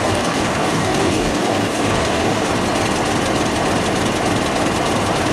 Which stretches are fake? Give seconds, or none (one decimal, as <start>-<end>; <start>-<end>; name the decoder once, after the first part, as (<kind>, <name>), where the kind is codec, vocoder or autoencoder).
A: 0.0-2.5 (codec, DAC)